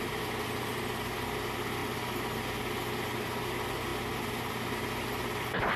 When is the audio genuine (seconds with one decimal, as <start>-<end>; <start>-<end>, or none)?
0.0-5.8